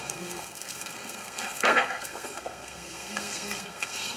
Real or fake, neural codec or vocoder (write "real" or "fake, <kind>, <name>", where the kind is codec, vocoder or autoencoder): fake, codec, SNAC